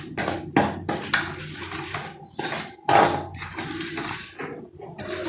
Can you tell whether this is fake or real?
real